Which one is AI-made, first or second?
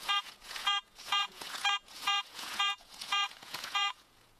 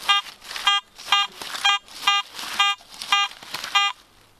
first